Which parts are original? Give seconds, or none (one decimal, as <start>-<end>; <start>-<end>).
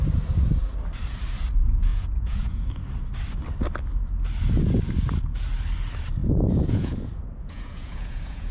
0.0-1.9; 2.6-6.2